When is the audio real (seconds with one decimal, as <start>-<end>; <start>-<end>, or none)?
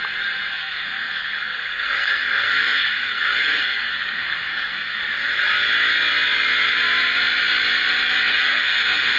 0.0-0.5; 5.0-8.3